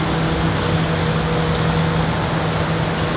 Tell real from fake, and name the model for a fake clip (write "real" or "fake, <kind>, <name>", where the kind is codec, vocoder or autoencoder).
real